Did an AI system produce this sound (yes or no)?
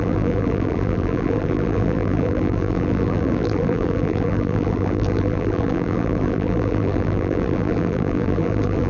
yes